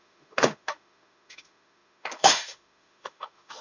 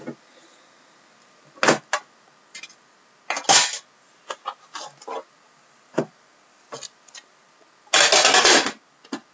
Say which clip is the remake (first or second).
first